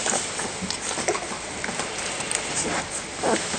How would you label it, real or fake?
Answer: real